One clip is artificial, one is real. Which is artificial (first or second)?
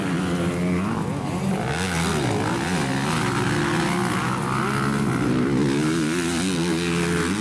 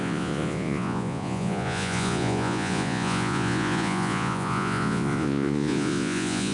second